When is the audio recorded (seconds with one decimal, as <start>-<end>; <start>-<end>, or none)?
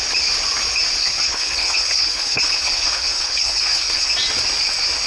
0.0-1.0; 4.1-5.1